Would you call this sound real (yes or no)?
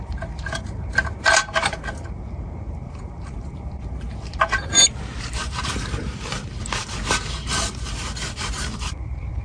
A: no